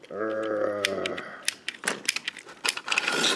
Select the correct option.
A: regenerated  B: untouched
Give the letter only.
B